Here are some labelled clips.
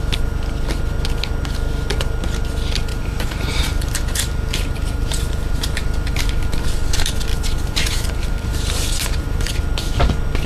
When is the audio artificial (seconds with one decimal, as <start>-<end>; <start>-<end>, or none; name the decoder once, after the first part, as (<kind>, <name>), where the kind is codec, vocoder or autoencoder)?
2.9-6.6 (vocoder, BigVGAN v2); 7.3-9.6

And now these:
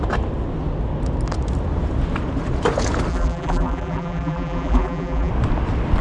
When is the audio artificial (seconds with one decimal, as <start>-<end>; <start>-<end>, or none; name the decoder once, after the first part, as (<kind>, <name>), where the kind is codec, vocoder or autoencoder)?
3.1-5.3 (vocoder, BigVGAN v2)

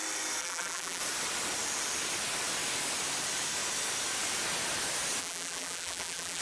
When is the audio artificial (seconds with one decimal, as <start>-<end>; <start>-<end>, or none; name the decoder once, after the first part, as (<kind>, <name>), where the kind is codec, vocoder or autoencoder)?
0.4-1.0 (vocoder, BigVGAN v2); 5.2-6.4

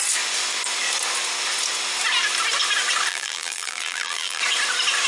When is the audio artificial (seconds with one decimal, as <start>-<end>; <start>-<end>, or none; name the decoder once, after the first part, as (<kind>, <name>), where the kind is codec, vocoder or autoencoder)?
3.1-4.4 (vocoder, BigVGAN v2)

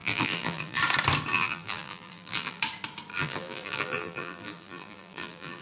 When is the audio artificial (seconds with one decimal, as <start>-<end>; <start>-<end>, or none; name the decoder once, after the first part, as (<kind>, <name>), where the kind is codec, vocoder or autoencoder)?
0.0-0.8 (vocoder, BigVGAN v2); 1.3-2.6; 3.1-5.6